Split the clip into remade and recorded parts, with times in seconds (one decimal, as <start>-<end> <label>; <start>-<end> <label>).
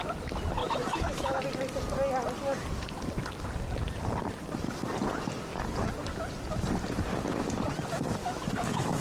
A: 0.0-0.6 recorded; 0.6-1.4 remade; 1.4-8.2 recorded; 8.2-9.0 remade